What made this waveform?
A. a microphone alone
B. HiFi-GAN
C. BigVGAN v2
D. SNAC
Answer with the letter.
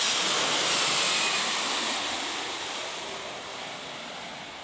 A